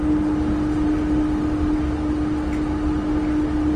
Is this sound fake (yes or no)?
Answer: no